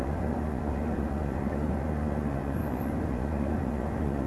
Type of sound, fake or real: fake